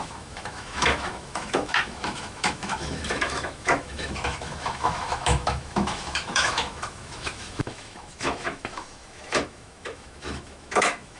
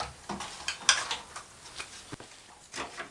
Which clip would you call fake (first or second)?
first